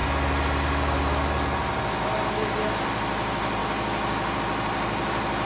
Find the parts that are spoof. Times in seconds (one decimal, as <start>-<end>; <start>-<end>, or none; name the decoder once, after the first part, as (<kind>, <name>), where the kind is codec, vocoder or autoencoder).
none